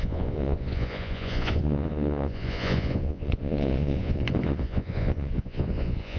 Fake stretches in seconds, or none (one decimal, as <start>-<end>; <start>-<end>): 0.0-6.2

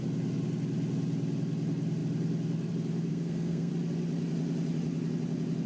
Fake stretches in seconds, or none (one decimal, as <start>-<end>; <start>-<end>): 3.1-3.7

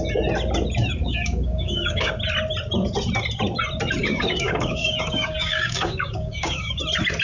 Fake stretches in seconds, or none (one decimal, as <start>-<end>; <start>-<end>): 1.0-2.1; 4.0-6.8

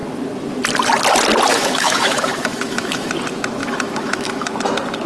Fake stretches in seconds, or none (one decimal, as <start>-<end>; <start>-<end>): 1.5-3.1; 3.6-4.5

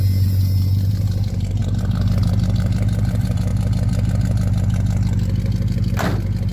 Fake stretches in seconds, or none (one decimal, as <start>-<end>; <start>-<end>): 0.0-3.5

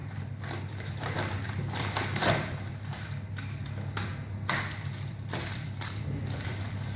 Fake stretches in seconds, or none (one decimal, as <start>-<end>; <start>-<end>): 0.6-4.1; 5.1-7.0

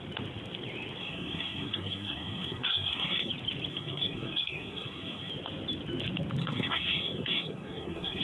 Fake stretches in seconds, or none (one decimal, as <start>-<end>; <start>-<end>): 1.0-3.3; 3.7-5.3; 6.4-8.2